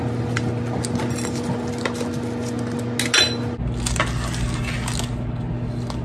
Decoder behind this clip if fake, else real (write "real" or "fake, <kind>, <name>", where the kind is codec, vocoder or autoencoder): real